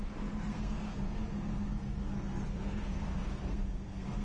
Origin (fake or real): fake